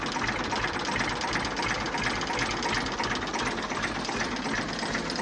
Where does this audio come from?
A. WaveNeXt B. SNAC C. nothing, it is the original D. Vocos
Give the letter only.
C